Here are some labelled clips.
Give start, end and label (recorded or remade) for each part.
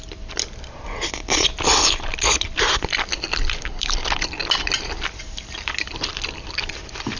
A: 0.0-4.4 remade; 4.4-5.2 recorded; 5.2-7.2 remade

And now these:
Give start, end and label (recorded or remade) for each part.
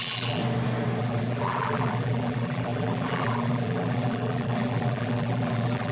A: 0.0-0.4 remade; 0.4-1.0 recorded; 1.0-5.9 remade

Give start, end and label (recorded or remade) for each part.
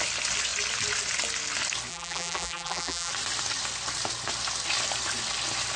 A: 0.0-1.9 recorded; 1.9-3.1 remade; 3.1-5.8 recorded